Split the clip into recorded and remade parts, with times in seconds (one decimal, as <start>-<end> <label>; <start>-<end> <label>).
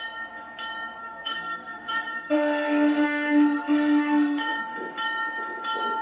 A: 0.0-1.0 recorded; 1.0-4.6 remade; 4.6-6.0 recorded